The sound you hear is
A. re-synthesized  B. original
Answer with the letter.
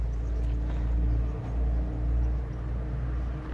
B